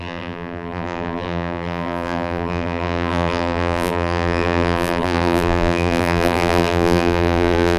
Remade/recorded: remade